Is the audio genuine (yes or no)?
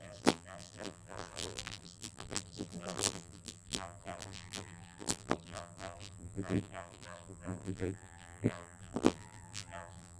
no